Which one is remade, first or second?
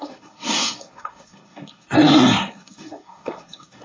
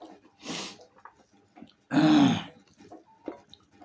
first